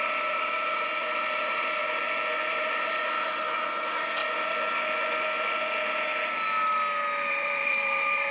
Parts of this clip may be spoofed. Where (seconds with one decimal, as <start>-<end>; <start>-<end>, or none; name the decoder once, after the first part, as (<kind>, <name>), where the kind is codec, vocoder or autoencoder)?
0.0-1.8 (vocoder, BigVGAN v2); 2.5-4.2; 7.3-8.3